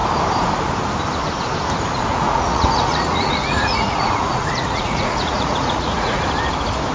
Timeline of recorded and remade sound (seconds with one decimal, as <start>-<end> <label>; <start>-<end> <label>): 0.0-2.1 recorded; 2.1-6.2 remade; 6.2-6.9 recorded